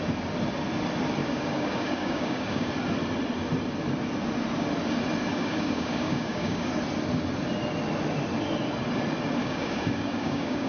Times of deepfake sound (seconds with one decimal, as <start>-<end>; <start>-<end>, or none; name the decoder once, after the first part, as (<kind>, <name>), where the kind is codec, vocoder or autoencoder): 1.2-2.7 (codec, DAC); 5.3-6.7; 9.4-10.7